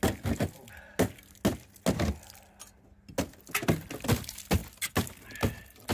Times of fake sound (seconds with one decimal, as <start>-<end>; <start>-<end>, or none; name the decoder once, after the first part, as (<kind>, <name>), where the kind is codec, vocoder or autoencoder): none